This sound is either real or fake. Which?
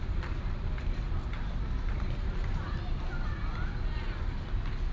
real